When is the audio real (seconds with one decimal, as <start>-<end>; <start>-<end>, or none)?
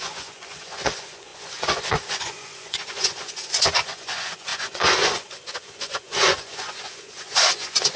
none